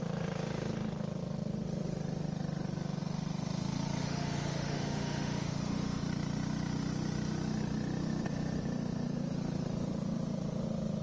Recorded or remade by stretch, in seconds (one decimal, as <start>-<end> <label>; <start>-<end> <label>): 0.0-4.0 recorded; 4.0-6.0 remade; 6.0-11.0 recorded